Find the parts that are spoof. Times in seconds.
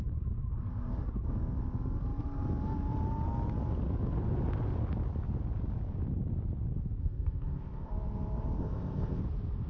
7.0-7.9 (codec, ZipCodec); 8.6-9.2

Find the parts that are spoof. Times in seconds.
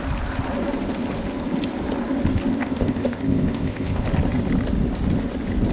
2.5-4.0 (codec, ZipCodec)